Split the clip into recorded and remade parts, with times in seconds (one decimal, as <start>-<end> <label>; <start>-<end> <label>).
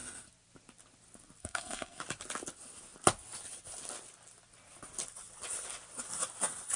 0.0-1.4 recorded; 1.4-2.0 remade; 2.0-6.8 recorded